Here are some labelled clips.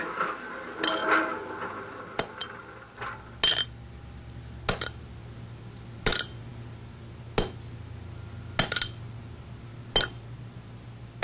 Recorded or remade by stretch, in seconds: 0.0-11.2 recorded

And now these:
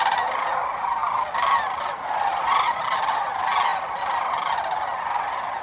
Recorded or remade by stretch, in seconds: 0.0-2.3 recorded; 2.3-2.8 remade; 2.8-5.6 recorded

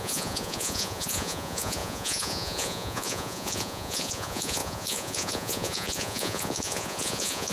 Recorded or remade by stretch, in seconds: 0.0-7.5 remade

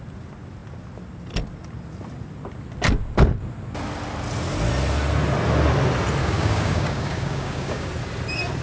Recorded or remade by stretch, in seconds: 0.0-6.2 recorded; 6.2-7.9 remade; 7.9-8.6 recorded